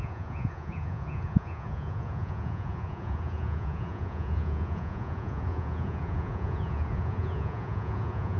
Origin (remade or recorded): remade